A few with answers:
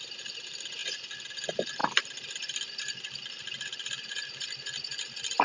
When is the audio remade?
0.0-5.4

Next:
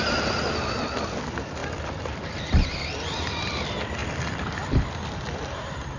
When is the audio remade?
none

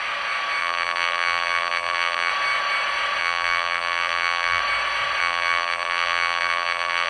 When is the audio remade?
0.6-2.3; 3.2-4.6; 5.2-7.1

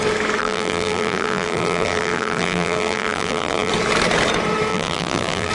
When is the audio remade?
0.4-3.7; 4.7-5.5

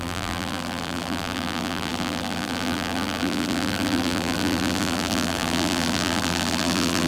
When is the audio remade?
0.0-7.1

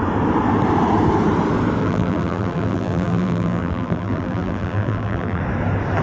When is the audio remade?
1.8-5.4

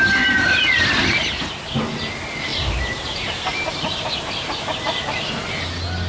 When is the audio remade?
2.5-3.8